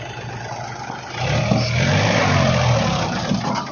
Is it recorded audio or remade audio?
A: recorded